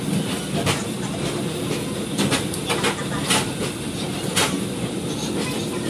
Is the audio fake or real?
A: real